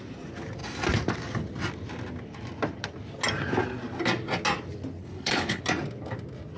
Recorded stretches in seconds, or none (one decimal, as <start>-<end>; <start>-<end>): 0.0-5.0; 5.6-6.6